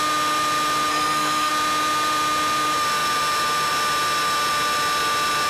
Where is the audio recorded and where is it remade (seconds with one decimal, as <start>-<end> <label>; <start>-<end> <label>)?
0.0-0.9 recorded; 0.9-1.5 remade; 1.5-5.5 recorded